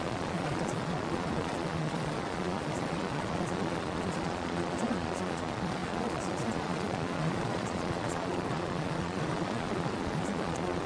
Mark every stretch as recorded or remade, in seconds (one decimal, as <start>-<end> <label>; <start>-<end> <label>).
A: 0.0-10.9 remade